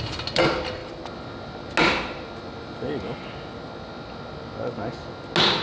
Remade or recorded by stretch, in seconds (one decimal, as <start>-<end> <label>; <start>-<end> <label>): 0.0-5.6 recorded